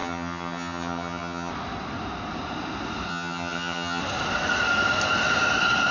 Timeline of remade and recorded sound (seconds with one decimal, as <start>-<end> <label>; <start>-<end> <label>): 0.0-1.5 remade; 1.5-3.1 recorded; 3.1-4.0 remade; 4.0-5.9 recorded